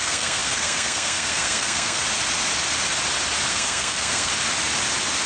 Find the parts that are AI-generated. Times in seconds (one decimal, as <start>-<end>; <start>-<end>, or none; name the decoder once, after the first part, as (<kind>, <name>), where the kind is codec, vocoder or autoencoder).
0.0-2.0 (codec, SNAC); 3.5-4.3